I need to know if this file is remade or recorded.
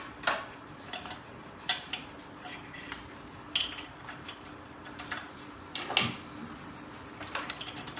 recorded